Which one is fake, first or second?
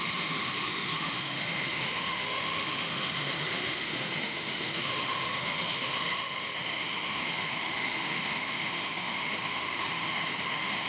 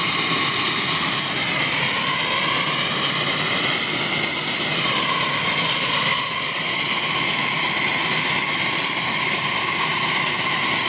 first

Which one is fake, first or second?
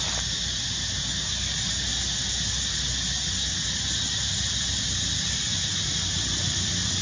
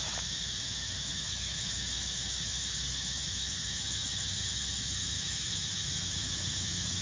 second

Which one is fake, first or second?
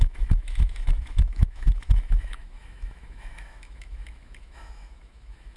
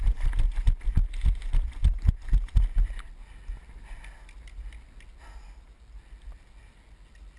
first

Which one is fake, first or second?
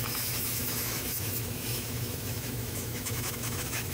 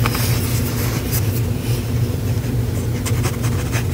first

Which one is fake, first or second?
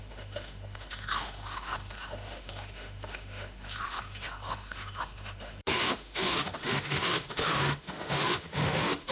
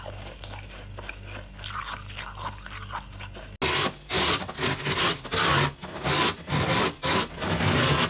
first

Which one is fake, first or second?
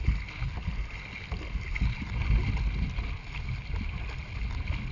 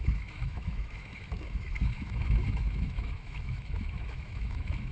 second